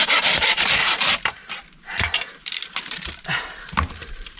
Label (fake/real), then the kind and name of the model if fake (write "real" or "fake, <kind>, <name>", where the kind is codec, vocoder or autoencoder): fake, vocoder, BigVGAN v2